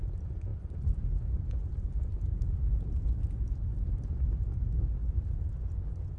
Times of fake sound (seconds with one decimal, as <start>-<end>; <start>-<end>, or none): none